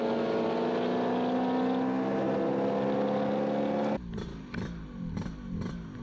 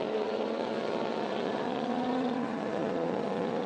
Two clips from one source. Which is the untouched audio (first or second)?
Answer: first